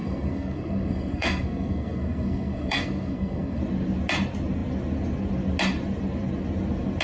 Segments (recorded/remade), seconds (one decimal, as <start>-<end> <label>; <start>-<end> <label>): 0.0-3.6 remade; 3.6-7.0 recorded